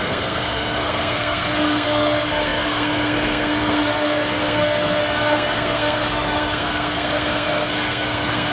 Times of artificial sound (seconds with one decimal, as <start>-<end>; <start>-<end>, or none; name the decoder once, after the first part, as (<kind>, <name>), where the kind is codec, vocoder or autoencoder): 0.0-8.5 (codec, SNAC)